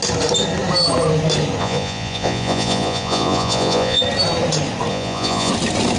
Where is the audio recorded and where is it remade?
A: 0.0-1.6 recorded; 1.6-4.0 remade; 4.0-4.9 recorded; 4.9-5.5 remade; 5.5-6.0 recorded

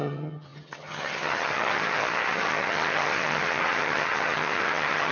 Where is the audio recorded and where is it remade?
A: 0.0-5.1 remade

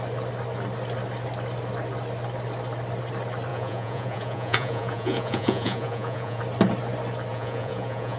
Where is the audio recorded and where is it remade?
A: 0.0-3.5 recorded; 3.5-6.4 remade; 6.4-7.3 recorded; 7.3-8.2 remade

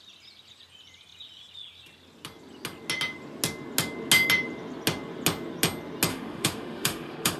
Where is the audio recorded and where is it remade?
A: 0.0-6.1 recorded; 6.1-7.4 remade

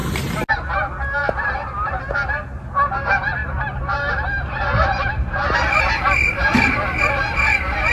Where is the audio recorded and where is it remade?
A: 0.0-1.2 recorded; 1.2-2.0 remade; 2.0-3.4 recorded; 3.4-7.0 remade; 7.0-7.9 recorded